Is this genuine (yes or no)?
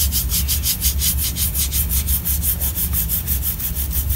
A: yes